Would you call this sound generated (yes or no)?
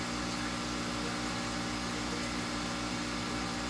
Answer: no